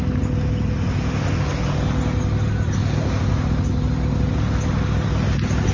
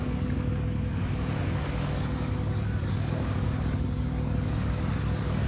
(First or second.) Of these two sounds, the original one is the first